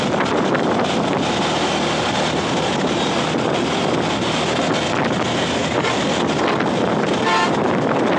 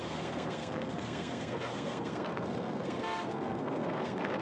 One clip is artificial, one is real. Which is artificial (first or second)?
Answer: second